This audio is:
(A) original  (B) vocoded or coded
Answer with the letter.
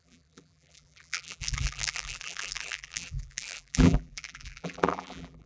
B